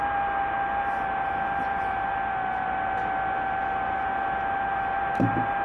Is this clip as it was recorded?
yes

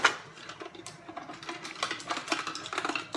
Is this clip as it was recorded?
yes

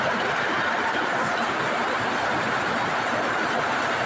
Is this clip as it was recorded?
yes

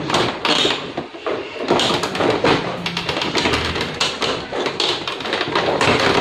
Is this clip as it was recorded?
yes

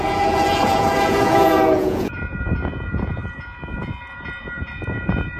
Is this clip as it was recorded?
no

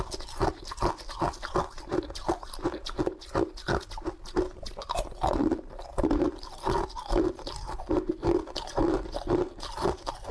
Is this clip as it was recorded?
yes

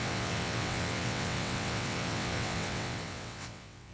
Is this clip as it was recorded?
no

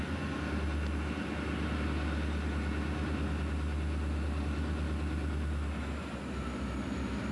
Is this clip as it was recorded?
yes